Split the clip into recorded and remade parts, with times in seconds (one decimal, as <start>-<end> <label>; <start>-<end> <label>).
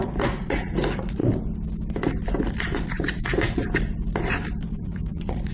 0.0-1.2 remade; 1.2-2.9 recorded; 2.9-3.6 remade; 3.6-4.8 recorded; 4.8-5.5 remade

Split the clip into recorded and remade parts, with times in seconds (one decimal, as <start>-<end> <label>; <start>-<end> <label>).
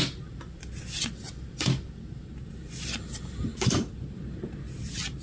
0.0-5.2 recorded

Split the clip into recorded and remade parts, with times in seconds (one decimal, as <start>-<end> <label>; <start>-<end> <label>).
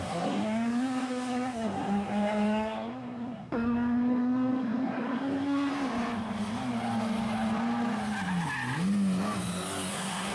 0.0-5.7 remade; 5.7-9.9 recorded; 9.9-10.3 remade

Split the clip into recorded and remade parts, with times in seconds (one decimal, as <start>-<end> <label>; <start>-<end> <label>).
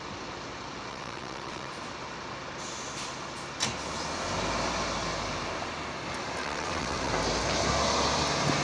0.0-0.9 recorded; 0.9-1.7 remade; 1.7-6.4 recorded; 6.4-7.1 remade; 7.1-8.6 recorded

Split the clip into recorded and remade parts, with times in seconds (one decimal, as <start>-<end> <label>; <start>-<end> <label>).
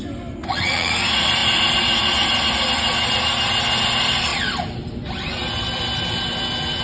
0.0-0.4 recorded; 0.4-0.9 remade; 0.9-6.8 recorded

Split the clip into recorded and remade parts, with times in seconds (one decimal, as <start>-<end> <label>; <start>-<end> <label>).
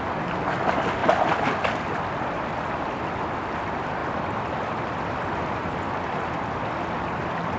0.0-7.6 recorded